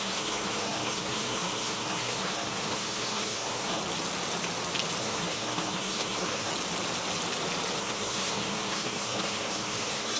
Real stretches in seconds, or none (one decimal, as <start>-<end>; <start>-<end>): 3.8-5.0; 6.5-7.8